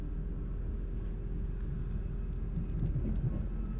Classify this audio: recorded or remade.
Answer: recorded